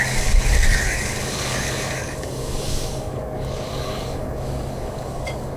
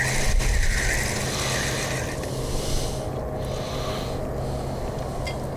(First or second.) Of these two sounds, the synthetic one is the first